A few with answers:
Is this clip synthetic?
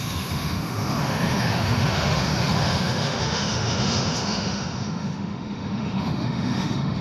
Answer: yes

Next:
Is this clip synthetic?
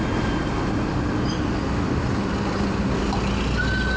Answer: no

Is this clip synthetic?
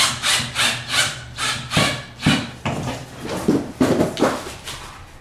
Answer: no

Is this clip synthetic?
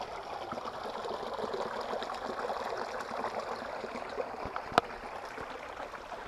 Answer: no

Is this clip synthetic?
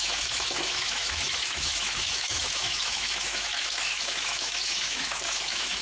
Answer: yes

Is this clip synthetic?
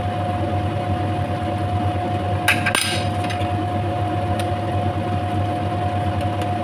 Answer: no